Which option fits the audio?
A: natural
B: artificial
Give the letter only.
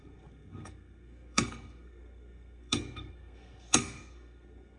B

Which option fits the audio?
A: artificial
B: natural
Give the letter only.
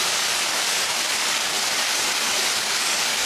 A